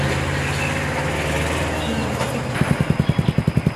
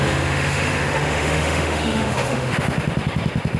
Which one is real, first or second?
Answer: first